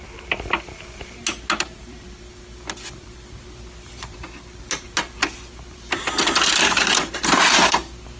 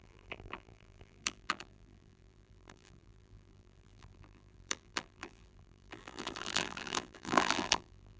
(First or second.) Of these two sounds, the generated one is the second